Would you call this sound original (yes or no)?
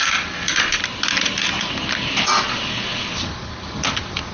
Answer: yes